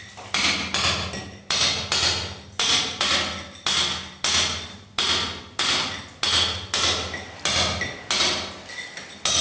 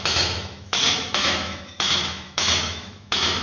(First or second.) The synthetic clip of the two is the second